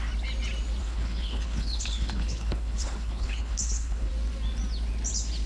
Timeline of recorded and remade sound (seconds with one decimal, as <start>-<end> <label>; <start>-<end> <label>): 0.0-0.8 recorded; 0.8-4.1 remade; 4.1-5.5 recorded